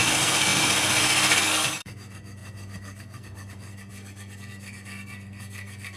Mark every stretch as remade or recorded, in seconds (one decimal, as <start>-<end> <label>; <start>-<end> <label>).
0.0-6.0 remade